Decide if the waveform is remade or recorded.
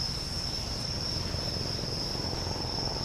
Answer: remade